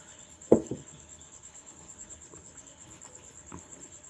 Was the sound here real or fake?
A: fake